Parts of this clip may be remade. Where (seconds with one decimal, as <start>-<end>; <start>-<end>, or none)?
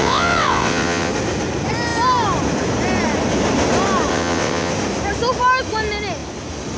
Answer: 0.0-1.1; 4.1-4.7